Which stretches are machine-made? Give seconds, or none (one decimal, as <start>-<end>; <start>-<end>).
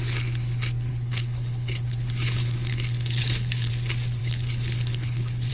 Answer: 0.9-3.7; 4.2-5.5